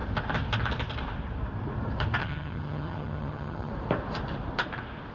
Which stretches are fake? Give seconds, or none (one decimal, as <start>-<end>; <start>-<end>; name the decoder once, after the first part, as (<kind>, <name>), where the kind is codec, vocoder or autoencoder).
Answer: 2.2-3.7 (vocoder, HiFi-GAN)

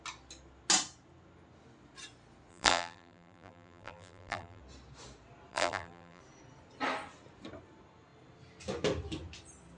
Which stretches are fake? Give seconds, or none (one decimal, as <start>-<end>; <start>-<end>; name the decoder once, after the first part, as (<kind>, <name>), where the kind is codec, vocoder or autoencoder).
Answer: 2.5-4.6 (vocoder, BigVGAN v2); 5.5-6.2

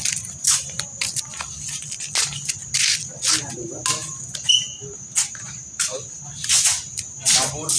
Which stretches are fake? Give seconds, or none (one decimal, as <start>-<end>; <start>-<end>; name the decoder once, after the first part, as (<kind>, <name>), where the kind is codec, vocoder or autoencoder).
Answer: none

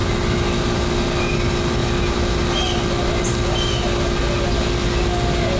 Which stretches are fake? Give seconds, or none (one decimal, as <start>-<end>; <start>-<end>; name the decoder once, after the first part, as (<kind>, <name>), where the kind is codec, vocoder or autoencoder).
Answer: none

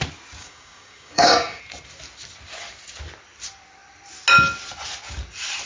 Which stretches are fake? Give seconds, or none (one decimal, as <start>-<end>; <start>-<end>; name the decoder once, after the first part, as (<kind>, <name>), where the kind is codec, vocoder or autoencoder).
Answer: 0.4-1.6 (codec, DAC)

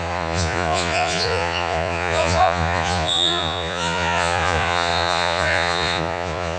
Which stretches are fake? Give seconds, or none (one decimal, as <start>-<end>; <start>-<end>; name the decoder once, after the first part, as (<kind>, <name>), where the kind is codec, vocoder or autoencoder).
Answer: 0.0-6.6 (vocoder, Vocos)

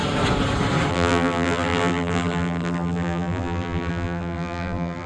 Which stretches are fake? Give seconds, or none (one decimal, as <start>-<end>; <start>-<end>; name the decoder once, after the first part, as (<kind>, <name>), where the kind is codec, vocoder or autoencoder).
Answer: 0.9-5.1 (vocoder, BigVGAN v2)